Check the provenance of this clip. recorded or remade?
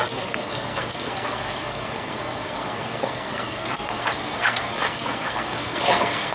remade